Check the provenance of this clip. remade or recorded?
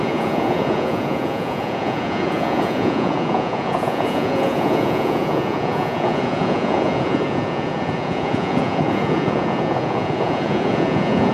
remade